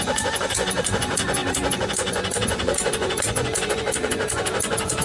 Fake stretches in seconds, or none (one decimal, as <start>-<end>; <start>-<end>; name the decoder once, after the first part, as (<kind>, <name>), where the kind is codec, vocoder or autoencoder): 0.0-5.0 (vocoder, Vocos)